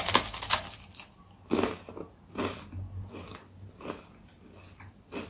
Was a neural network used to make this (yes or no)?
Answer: no